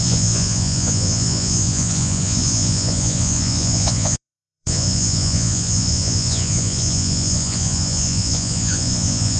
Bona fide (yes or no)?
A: no